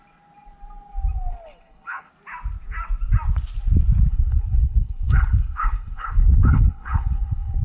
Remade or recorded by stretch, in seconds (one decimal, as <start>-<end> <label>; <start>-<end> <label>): 0.0-1.3 recorded; 1.3-2.1 remade; 2.1-4.1 recorded; 4.1-7.6 remade